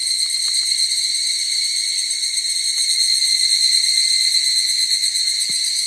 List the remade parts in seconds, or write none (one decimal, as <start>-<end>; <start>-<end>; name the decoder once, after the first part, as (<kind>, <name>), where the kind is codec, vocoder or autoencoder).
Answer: 0.0-1.9 (vocoder, BigVGAN v2); 3.1-4.3